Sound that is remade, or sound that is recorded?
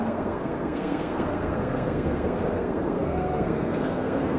remade